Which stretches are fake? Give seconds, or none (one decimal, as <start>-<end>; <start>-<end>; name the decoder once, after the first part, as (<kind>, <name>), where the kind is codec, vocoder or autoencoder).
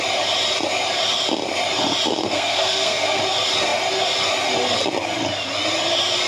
2.2-3.2 (codec, SNAC)